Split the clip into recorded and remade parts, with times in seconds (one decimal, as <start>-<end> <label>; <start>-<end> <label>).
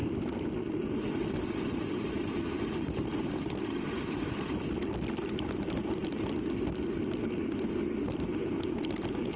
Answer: 0.0-2.1 recorded; 2.1-6.0 remade; 6.0-6.8 recorded; 6.8-9.4 remade